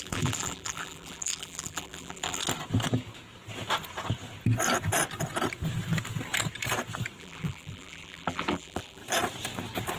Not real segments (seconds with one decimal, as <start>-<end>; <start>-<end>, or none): 0.0-2.4; 7.2-9.0